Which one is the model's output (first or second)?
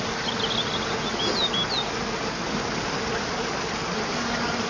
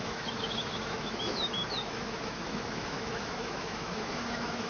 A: second